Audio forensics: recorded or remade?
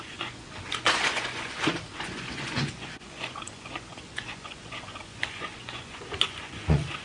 remade